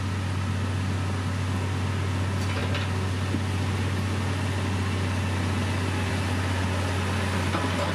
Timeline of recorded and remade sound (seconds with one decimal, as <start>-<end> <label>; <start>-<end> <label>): 0.0-7.9 recorded